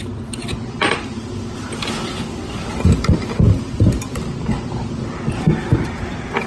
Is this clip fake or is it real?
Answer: real